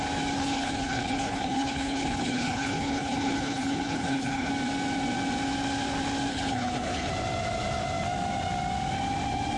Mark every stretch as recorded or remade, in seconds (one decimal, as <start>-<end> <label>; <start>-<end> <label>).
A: 0.0-0.4 recorded; 0.4-4.5 remade; 4.5-6.3 recorded; 6.3-7.1 remade; 7.1-9.6 recorded